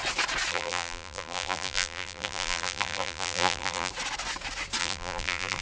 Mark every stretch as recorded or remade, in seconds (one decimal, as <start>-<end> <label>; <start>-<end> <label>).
0.0-0.5 recorded; 0.5-3.9 remade; 3.9-4.8 recorded; 4.8-5.6 remade